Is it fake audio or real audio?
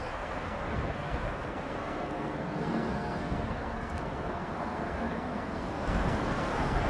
fake